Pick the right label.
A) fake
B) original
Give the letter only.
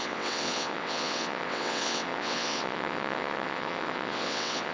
A